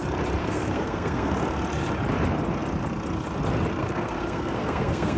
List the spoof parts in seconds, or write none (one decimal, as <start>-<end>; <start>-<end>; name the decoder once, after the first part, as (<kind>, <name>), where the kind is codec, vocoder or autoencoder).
0.4-1.3 (codec, SNAC); 3.8-5.2